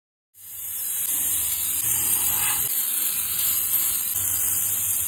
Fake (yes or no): no